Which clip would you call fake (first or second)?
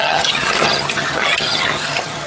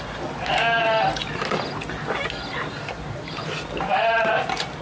first